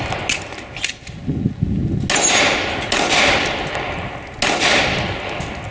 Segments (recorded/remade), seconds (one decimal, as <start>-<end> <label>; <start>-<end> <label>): 0.0-5.7 recorded